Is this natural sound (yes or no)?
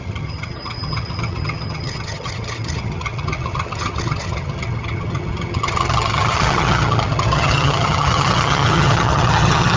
no